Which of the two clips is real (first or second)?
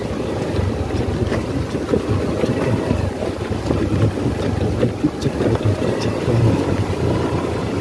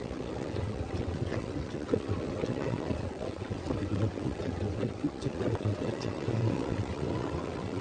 first